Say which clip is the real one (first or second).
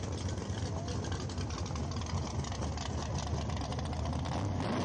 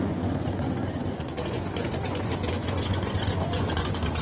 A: first